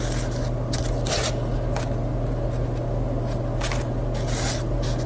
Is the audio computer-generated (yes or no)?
no